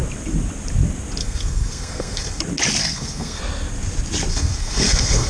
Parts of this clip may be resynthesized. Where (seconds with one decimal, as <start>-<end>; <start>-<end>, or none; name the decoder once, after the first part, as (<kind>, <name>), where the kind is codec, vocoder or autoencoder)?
1.2-2.4 (codec, SNAC); 2.8-3.4; 4.3-5.3